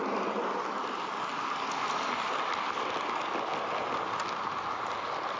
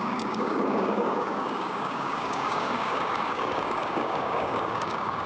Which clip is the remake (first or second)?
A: second